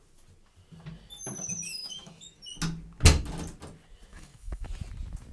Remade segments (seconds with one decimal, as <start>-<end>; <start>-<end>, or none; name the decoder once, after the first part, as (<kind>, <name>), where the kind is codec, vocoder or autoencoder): 1.8-2.4 (autoencoder, DAC-VAE); 4.1-4.7